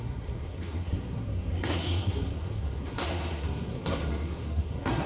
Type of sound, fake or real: fake